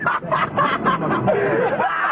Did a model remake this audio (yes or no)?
no